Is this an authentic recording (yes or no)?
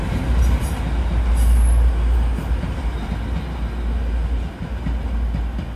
yes